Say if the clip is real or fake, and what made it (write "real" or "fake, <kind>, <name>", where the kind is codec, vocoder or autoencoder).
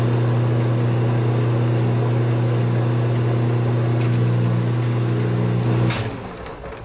real